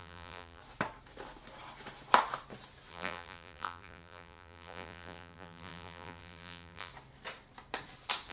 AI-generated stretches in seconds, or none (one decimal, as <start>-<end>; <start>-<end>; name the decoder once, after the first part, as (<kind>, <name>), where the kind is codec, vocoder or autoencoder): 0.0-0.6 (vocoder, BigVGAN v2); 2.9-6.9